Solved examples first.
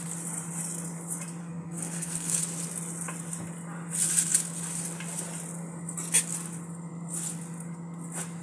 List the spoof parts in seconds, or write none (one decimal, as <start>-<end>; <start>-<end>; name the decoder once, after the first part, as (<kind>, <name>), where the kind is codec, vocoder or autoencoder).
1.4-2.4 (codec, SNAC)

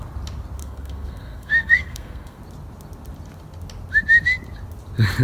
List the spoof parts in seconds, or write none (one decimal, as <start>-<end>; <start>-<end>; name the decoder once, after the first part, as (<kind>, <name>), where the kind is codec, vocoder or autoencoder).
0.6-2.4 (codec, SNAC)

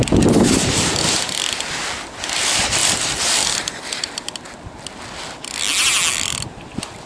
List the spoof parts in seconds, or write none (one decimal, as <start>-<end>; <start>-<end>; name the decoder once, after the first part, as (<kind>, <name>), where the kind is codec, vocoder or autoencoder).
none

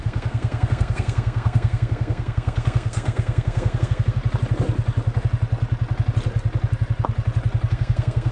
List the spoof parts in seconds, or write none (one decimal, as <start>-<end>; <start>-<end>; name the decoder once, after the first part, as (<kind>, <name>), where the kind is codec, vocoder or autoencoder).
0.0-4.2 (codec, SNAC); 7.7-8.3

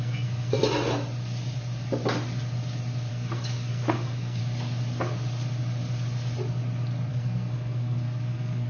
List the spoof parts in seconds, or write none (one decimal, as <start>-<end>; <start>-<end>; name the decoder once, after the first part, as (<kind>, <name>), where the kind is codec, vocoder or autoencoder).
0.0-0.6 (codec, SNAC); 3.1-4.4; 7.1-8.7

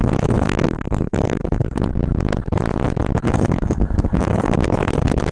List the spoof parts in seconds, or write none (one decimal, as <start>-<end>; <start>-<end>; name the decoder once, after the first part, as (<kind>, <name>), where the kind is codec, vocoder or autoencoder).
0.0-1.9 (codec, SNAC); 3.3-5.3

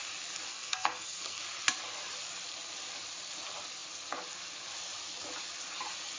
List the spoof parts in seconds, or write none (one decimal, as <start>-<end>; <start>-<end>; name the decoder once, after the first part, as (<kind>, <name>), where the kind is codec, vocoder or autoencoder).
0.5-1.4 (codec, SNAC)

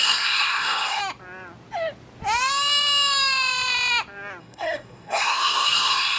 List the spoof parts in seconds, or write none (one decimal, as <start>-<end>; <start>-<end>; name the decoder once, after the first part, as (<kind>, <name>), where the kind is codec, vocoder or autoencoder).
0.0-1.0 (codec, SNAC); 4.4-6.2